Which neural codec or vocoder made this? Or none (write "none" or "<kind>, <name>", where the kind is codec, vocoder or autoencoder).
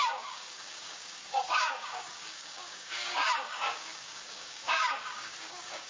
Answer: codec, DAC